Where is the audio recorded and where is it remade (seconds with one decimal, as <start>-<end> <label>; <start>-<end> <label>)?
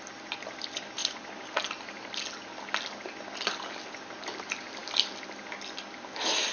0.0-6.5 recorded